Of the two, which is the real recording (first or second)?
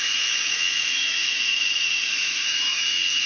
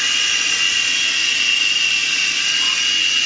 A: second